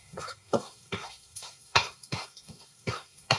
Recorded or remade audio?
remade